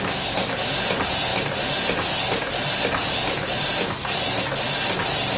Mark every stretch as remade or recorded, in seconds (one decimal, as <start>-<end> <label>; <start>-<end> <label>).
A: 0.0-5.4 recorded